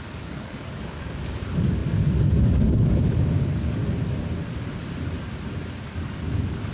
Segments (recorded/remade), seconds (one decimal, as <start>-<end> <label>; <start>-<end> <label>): 0.0-3.8 remade; 3.8-5.9 recorded; 5.9-6.7 remade